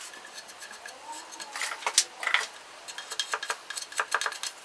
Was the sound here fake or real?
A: real